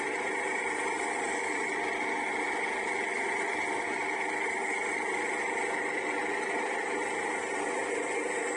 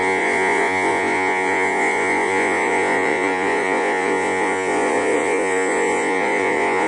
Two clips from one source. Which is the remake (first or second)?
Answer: second